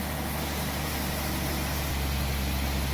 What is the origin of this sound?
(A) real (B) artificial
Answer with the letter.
A